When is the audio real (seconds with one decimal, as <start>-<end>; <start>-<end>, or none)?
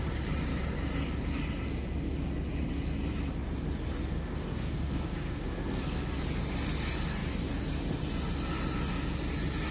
0.0-4.0; 6.2-9.7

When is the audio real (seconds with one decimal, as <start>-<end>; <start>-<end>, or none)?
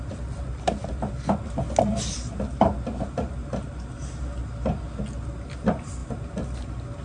0.0-7.0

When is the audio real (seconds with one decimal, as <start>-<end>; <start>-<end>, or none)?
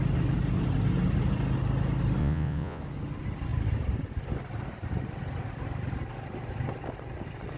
0.0-2.2; 2.8-7.6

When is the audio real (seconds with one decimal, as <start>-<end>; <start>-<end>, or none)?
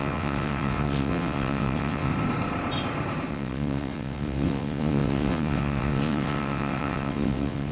2.1-3.3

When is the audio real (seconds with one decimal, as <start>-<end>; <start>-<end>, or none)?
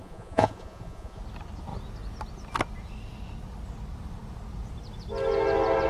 1.2-5.9